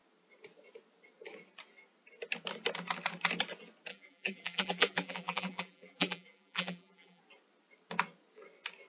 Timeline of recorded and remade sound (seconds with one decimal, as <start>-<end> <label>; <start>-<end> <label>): 0.0-3.9 recorded; 3.9-7.2 remade; 7.2-8.9 recorded